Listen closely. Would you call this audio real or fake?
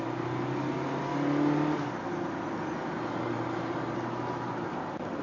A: real